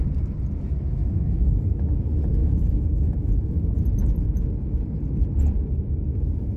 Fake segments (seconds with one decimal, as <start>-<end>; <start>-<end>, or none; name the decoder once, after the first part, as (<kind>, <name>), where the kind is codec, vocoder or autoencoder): 0.9-1.8 (autoencoder, DAC-VAE); 2.4-3.3